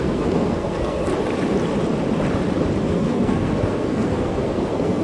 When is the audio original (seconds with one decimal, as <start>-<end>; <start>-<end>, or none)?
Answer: 1.1-2.8